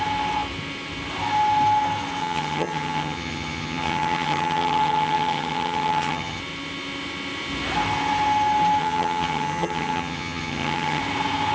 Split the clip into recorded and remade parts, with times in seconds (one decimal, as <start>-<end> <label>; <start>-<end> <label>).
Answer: 0.0-2.2 recorded; 2.2-6.4 remade; 6.4-8.8 recorded; 8.8-11.0 remade; 11.0-11.5 recorded